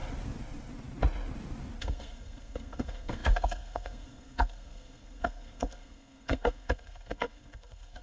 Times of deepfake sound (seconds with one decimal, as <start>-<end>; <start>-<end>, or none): 1.8-8.0